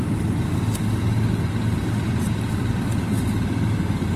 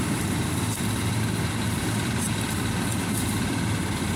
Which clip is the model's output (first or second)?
second